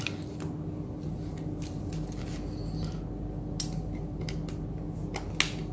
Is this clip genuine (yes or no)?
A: yes